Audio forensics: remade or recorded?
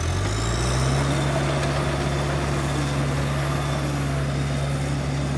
recorded